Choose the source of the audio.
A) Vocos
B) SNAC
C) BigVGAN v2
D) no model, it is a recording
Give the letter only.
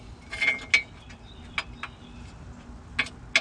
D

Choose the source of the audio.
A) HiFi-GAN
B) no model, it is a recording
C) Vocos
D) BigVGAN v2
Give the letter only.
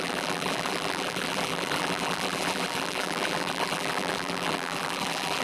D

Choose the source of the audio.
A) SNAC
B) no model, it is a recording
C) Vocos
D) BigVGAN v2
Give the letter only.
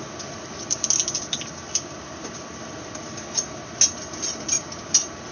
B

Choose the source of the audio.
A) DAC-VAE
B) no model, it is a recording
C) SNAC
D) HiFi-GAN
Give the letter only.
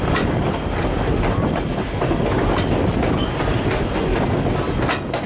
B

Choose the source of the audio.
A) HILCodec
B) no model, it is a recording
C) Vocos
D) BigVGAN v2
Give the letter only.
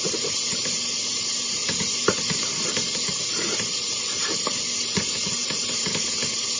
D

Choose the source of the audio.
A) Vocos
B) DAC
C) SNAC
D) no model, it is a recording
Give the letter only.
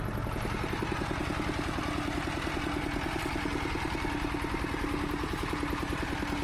D